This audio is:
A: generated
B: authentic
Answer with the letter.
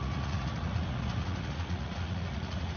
A